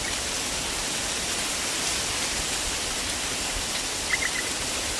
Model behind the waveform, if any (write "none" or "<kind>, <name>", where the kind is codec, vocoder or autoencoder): none